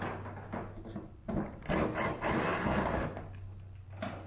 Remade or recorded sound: recorded